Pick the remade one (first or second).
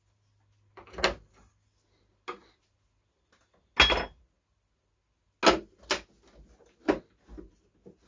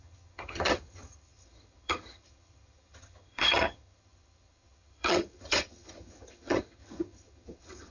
second